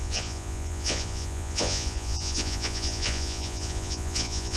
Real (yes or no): no